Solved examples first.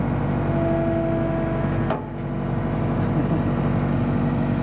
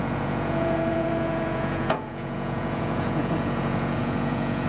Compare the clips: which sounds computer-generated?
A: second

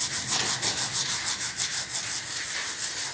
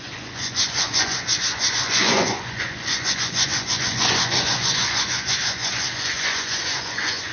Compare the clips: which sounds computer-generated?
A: second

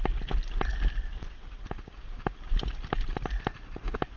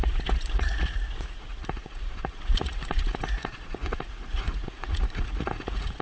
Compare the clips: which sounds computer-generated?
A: second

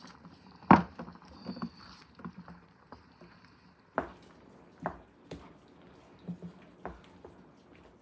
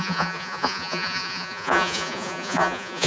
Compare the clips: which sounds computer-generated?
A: second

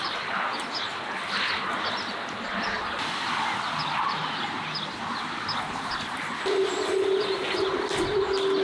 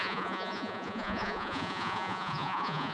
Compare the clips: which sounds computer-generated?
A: second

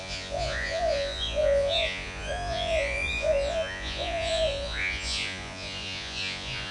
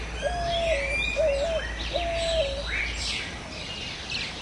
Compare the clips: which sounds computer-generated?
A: first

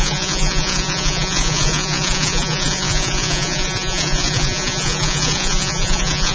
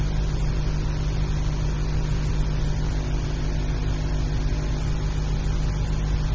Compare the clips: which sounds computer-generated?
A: first